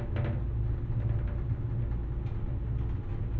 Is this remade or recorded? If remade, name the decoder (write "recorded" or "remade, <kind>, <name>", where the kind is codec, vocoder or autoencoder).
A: recorded